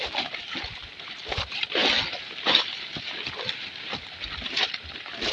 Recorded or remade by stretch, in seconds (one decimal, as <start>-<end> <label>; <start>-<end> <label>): 0.0-5.3 recorded